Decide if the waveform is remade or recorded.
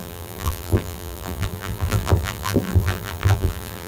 remade